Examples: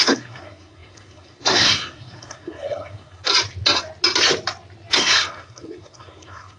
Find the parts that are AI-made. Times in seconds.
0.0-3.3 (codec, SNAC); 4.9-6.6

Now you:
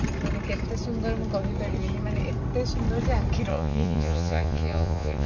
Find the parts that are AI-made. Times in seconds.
3.5-5.3 (vocoder, Vocos)

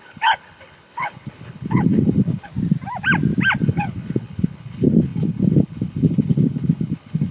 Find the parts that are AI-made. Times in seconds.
0.0-2.5 (codec, HILCodec); 3.6-7.3